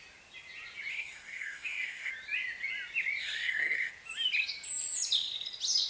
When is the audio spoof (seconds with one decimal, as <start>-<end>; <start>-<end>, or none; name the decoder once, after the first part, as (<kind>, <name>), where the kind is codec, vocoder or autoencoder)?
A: 0.9-2.1 (codec, SNAC); 3.2-3.9